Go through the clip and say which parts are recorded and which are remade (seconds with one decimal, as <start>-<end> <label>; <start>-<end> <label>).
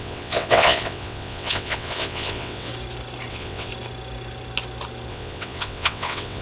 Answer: 0.0-2.7 remade; 2.7-3.3 recorded; 3.3-3.7 remade; 3.7-5.1 recorded; 5.1-6.4 remade